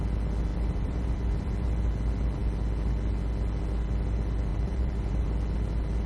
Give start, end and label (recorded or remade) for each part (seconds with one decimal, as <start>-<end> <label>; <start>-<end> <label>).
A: 0.0-0.5 recorded; 0.5-1.9 remade; 1.9-4.5 recorded; 4.5-5.3 remade; 5.3-6.1 recorded